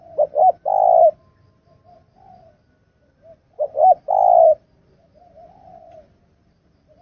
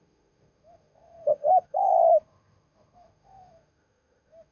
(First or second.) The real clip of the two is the first